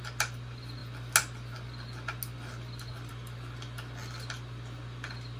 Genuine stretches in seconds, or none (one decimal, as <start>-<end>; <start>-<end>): 0.0-5.4